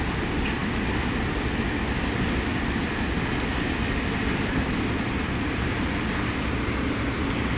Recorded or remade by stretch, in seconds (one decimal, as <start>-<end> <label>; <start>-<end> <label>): 0.0-7.6 recorded